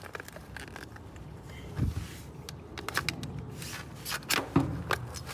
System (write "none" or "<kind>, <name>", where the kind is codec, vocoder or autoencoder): none